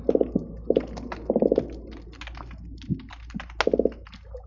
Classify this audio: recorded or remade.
recorded